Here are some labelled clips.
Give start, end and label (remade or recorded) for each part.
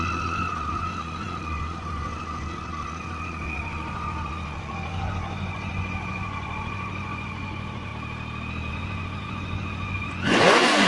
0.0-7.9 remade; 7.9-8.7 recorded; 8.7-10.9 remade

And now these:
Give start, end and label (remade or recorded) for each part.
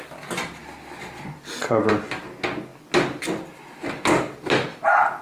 0.0-5.2 recorded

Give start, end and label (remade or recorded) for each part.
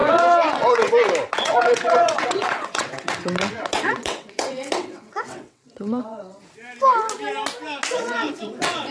0.0-0.9 remade; 0.9-1.3 recorded; 1.3-6.4 remade; 6.4-7.9 recorded; 7.9-8.9 remade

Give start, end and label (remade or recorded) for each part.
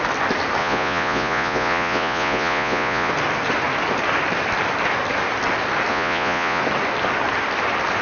0.0-0.6 recorded; 0.6-3.1 remade; 3.1-5.9 recorded; 5.9-6.6 remade; 6.6-8.0 recorded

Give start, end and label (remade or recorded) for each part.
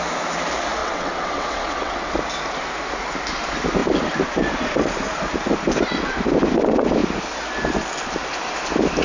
0.0-0.8 recorded; 0.8-2.1 remade; 2.1-9.0 recorded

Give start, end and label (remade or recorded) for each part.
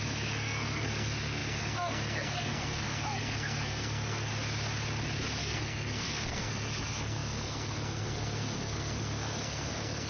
0.0-4.3 remade; 4.3-5.4 recorded; 5.4-10.1 remade